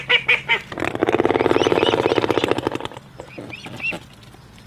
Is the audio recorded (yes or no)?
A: yes